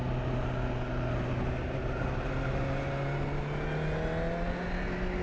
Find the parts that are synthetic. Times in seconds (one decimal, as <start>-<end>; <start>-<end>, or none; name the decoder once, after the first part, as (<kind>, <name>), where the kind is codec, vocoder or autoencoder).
none